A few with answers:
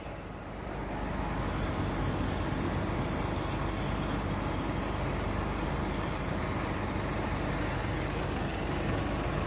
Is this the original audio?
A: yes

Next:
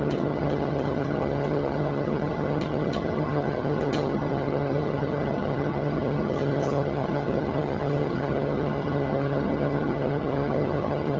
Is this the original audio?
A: no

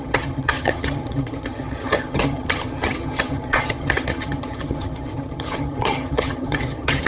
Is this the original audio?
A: no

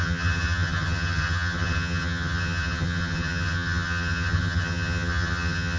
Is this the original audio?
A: no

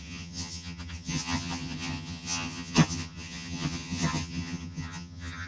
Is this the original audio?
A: no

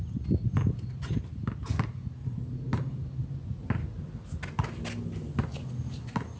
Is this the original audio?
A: yes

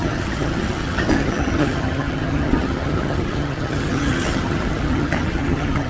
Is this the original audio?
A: no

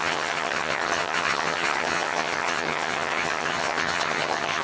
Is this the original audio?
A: no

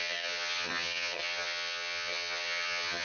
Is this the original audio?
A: no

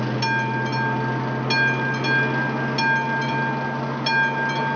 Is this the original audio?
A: yes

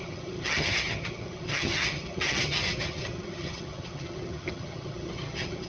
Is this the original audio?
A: no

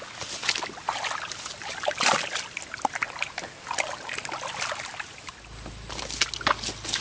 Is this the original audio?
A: yes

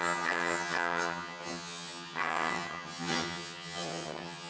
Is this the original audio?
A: no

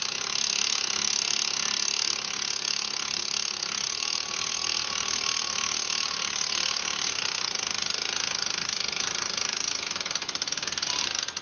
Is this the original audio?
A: yes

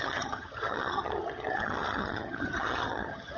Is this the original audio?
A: no